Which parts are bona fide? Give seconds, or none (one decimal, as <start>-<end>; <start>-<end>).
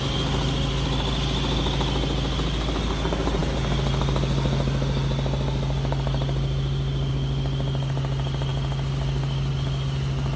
0.0-10.4